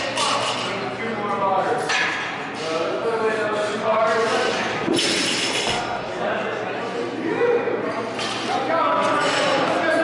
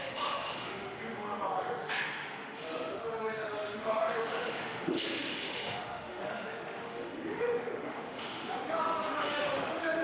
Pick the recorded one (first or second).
first